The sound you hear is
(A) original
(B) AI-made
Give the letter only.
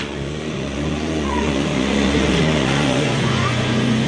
B